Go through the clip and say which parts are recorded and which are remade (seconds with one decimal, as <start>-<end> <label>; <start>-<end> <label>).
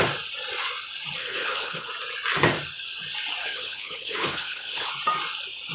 0.0-1.2 recorded; 1.2-1.9 remade; 1.9-3.4 recorded; 3.4-4.9 remade; 4.9-5.7 recorded